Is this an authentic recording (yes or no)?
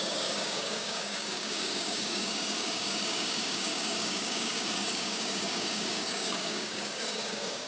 no